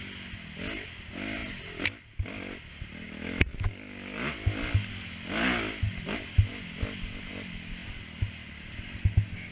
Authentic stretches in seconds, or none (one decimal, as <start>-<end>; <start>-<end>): 0.0-9.5